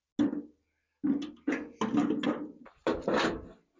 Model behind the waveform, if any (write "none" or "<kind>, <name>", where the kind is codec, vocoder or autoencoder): none